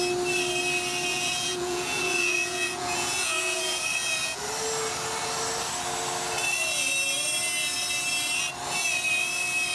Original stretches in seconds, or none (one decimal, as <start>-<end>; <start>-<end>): 0.0-1.1; 4.4-9.7

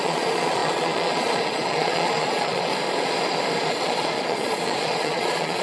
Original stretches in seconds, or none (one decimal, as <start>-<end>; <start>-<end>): 2.7-3.7

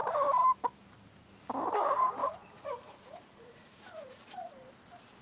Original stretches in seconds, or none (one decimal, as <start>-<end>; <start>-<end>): 0.0-2.2; 4.5-5.2

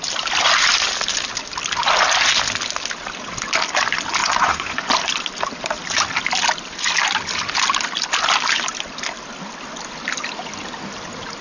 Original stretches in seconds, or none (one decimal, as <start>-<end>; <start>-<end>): 0.0-4.2; 4.9-11.4

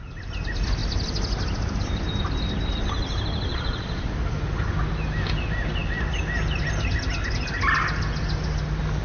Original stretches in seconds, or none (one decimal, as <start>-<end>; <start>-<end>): 0.0-3.5; 4.1-9.0

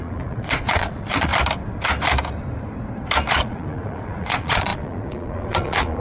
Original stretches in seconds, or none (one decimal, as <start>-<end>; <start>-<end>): 1.3-3.3

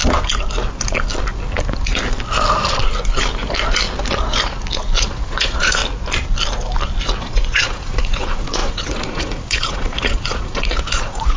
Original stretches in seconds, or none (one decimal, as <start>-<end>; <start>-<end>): 0.0-5.1; 5.8-7.2

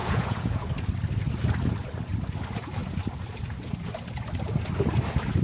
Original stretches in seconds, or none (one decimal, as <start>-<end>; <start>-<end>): 0.7-5.4